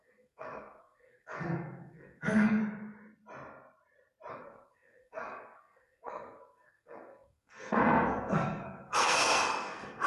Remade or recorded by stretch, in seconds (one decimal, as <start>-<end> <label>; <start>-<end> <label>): 0.0-2.6 remade; 2.6-4.3 recorded; 4.3-10.1 remade